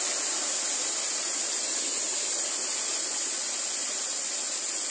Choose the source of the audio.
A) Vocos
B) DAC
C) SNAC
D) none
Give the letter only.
D